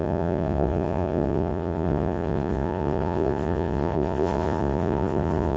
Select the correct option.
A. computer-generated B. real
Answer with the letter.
A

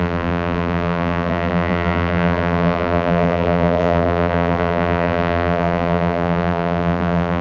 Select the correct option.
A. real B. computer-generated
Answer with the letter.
B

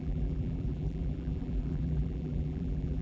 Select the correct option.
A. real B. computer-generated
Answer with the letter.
B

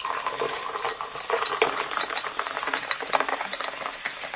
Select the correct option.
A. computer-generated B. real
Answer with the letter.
A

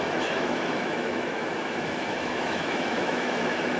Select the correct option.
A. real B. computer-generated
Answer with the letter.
B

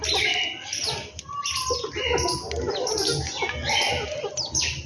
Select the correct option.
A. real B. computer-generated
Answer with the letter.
A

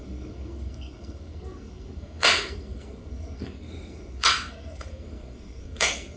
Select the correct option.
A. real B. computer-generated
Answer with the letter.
B